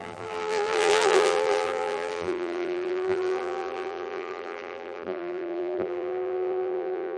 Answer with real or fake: fake